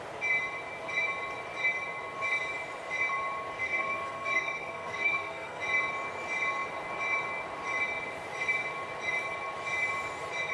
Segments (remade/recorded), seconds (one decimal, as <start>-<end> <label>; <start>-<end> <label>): 0.0-3.6 recorded; 3.6-5.6 remade; 5.6-10.5 recorded